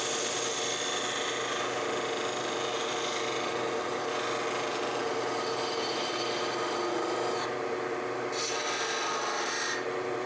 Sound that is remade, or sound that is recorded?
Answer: recorded